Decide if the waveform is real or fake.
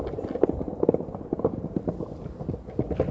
real